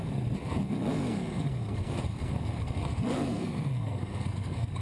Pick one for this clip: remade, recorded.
remade